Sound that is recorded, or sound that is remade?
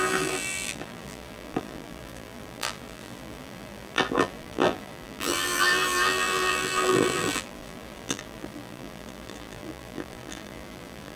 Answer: remade